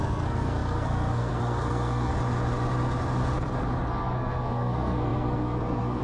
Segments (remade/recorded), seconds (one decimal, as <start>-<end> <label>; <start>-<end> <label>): 0.0-2.1 remade; 2.1-3.9 recorded; 3.9-6.0 remade